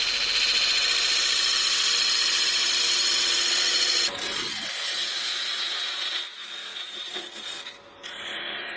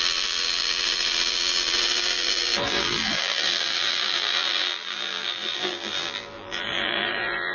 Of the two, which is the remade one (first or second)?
second